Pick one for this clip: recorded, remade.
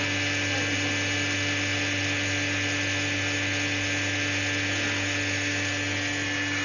recorded